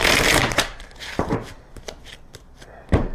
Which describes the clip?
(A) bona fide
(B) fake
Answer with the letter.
B